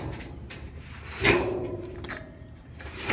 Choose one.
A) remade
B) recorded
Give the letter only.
A